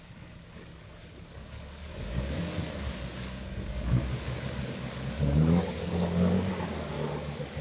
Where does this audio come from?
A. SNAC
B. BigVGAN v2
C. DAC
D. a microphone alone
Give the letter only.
C